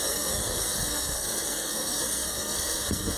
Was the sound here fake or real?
fake